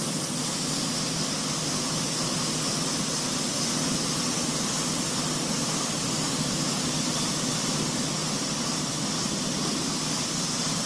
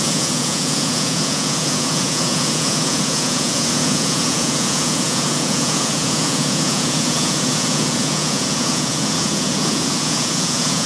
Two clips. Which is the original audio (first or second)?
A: first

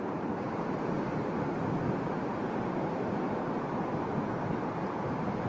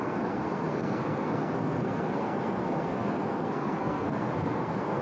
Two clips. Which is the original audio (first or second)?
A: first